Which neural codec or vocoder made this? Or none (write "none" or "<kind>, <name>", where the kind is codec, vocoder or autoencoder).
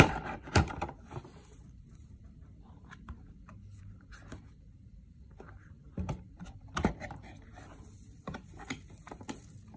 vocoder, BigVGAN v2